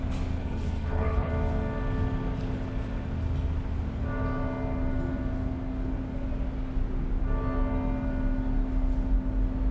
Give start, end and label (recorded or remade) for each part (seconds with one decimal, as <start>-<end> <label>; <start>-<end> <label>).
0.0-0.4 recorded; 0.4-1.3 remade; 1.3-9.7 recorded